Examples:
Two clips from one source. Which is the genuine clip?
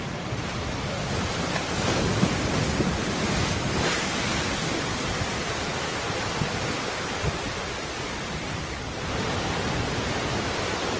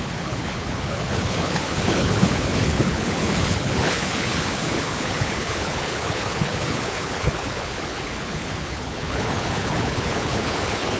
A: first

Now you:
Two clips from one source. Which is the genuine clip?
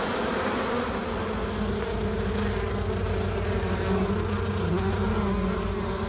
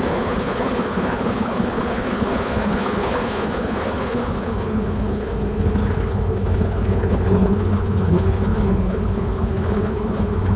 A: first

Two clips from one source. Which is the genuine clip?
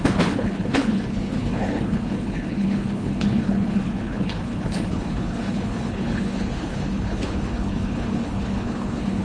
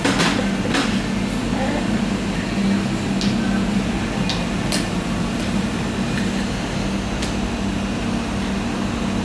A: second